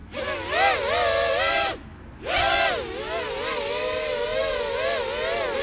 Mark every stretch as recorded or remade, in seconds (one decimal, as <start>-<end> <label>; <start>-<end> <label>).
0.0-5.6 recorded